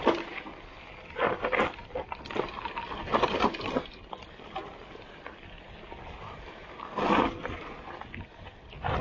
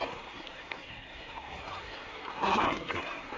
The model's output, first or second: second